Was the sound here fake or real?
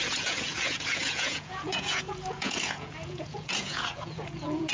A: fake